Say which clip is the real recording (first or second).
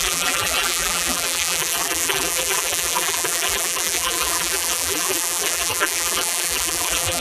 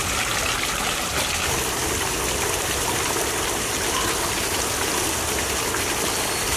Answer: second